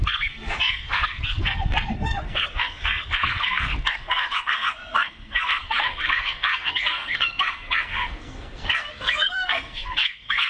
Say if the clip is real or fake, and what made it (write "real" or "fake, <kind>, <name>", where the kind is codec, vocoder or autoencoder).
fake, codec, SNAC